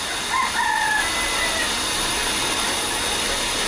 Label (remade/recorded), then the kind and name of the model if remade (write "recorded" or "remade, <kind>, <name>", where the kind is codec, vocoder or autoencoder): recorded